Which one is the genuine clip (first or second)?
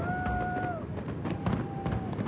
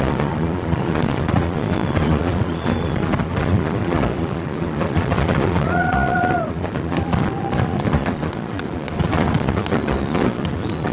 first